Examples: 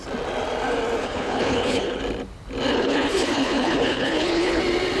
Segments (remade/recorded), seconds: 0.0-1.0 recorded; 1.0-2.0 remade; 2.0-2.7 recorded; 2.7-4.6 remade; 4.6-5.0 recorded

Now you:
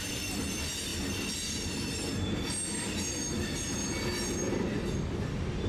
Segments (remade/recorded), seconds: 0.0-5.7 recorded

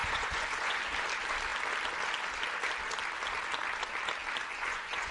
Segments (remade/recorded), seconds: 0.0-0.8 remade; 0.8-4.5 recorded; 4.5-5.1 remade

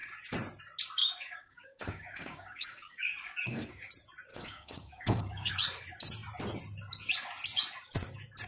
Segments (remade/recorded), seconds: 0.0-1.0 recorded; 1.0-3.9 remade; 3.9-4.3 recorded; 4.3-5.5 remade; 5.5-8.5 recorded

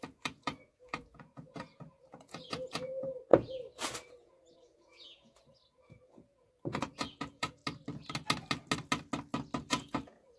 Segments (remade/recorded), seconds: 0.0-7.6 remade; 7.6-9.7 recorded; 9.7-10.4 remade

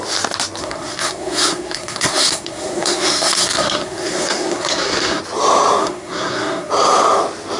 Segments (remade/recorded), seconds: 0.0-0.6 recorded; 0.6-5.2 remade; 5.2-5.8 recorded; 5.8-6.7 remade; 6.7-7.6 recorded

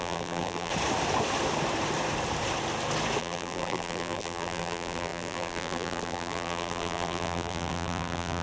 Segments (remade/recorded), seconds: 0.0-0.7 remade; 0.7-3.2 recorded; 3.2-8.4 remade

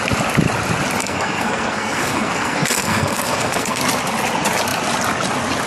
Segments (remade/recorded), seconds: 0.0-1.0 recorded; 1.0-3.8 remade; 3.8-5.7 recorded